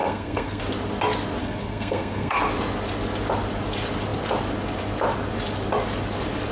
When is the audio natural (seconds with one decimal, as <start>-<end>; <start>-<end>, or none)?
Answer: 0.6-1.4; 2.4-6.5